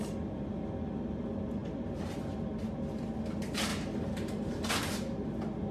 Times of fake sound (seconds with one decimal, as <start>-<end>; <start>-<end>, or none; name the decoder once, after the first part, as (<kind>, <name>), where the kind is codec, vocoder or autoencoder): 3.7-4.7 (vocoder, BigVGAN v2)